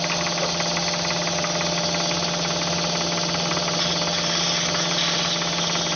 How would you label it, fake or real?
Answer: real